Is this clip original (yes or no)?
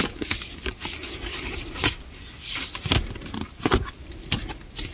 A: yes